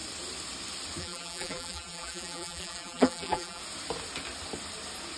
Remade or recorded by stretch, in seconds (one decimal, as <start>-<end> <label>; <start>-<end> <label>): 0.0-1.0 recorded; 1.0-3.6 remade; 3.6-5.2 recorded